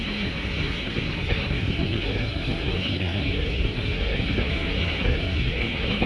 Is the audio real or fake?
fake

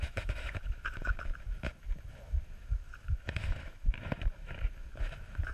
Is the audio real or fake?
fake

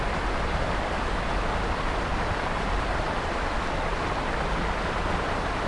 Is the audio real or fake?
real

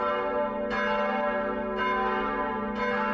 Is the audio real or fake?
real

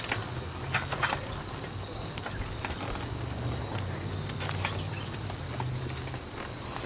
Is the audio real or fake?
real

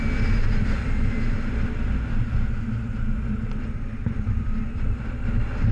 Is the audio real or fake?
real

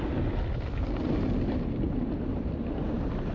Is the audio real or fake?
real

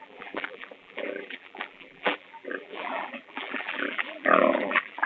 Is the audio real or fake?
fake